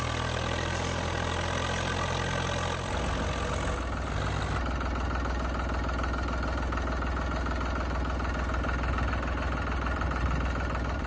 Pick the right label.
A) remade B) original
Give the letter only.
B